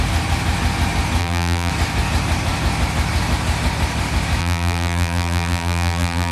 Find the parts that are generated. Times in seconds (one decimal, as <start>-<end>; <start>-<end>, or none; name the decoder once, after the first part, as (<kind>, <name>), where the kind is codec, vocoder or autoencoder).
1.2-1.7 (vocoder, BigVGAN v2); 4.4-6.3